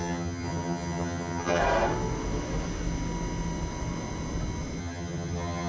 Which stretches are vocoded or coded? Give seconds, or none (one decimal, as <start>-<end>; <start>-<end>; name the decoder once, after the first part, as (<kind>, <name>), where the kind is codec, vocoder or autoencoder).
0.0-1.6 (vocoder, HiFi-GAN); 4.8-5.7